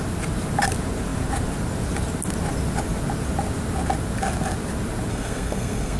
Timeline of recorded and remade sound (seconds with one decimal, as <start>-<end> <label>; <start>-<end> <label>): 0.0-5.1 recorded; 5.1-6.0 remade